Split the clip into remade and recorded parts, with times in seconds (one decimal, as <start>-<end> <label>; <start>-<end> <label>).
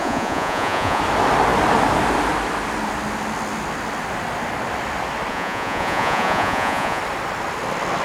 0.0-1.0 remade; 1.0-5.3 recorded; 5.3-7.0 remade; 7.0-8.0 recorded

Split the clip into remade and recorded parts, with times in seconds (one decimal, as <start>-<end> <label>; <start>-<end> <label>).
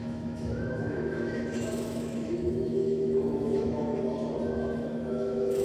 0.0-3.9 remade; 3.9-4.5 recorded; 4.5-5.6 remade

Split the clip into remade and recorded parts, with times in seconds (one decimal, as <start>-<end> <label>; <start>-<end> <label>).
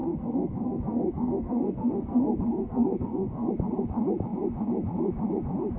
0.0-3.5 remade; 3.5-5.8 recorded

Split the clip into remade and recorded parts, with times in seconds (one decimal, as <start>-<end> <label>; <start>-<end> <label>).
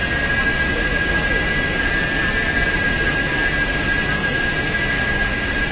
0.0-5.7 recorded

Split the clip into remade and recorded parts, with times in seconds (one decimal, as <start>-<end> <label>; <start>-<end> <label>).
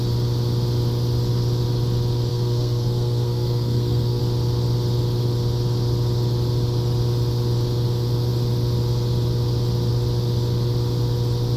0.0-2.3 recorded; 2.3-4.2 remade; 4.2-11.6 recorded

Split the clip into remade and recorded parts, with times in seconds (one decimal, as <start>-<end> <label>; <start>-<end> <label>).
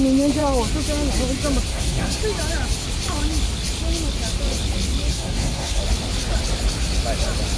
0.0-1.7 recorded; 1.7-2.2 remade; 2.2-5.1 recorded; 5.1-5.8 remade; 5.8-7.6 recorded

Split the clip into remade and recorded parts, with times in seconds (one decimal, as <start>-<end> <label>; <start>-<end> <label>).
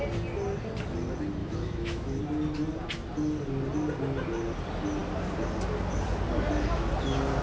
0.0-1.4 recorded; 1.4-2.2 remade; 2.2-7.4 recorded